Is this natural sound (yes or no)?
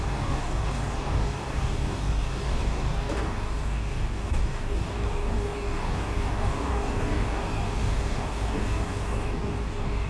no